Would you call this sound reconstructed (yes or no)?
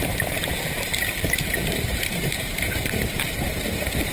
yes